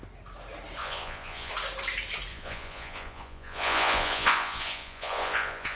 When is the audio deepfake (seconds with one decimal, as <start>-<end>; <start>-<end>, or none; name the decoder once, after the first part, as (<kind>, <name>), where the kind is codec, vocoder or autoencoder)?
0.8-1.5 (vocoder, Vocos); 2.3-5.8